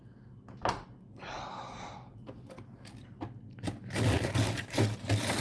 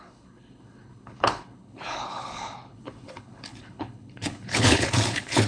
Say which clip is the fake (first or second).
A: second